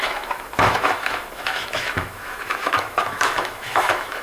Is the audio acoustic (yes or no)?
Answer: no